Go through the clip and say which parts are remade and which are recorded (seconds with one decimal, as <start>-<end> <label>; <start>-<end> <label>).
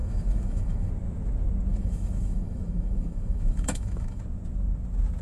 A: 0.0-0.9 remade; 0.9-1.7 recorded; 1.7-4.2 remade; 4.2-5.2 recorded